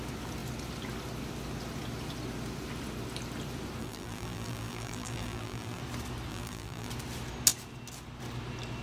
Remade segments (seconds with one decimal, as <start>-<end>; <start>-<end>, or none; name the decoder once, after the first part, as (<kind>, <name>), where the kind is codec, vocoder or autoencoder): 3.8-5.8 (vocoder, BigVGAN v2); 6.3-6.9